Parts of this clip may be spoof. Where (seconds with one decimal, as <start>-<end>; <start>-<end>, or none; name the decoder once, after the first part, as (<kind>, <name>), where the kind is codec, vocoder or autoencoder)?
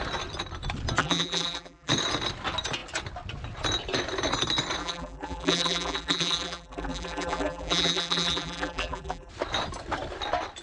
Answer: 1.0-1.9 (vocoder, BigVGAN v2); 4.8-9.3